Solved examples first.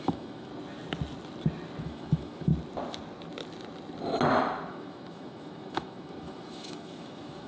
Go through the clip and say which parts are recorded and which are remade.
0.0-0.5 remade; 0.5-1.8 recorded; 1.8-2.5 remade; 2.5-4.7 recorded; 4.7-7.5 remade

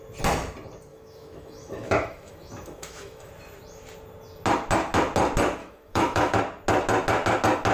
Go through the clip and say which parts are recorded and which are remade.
0.0-0.9 recorded; 0.9-3.3 remade; 3.3-5.6 recorded; 5.6-6.4 remade; 6.4-7.7 recorded